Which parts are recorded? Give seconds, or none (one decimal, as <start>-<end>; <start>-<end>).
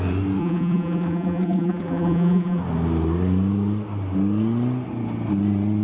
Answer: 0.0-0.4; 2.6-5.8